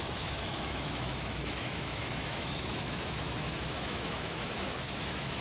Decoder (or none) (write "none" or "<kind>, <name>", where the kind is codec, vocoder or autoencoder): autoencoder, DAC-VAE